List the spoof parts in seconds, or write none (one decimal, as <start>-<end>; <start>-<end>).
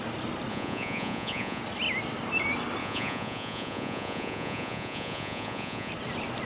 0.5-1.6; 2.8-5.9